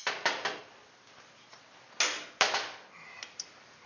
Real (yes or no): yes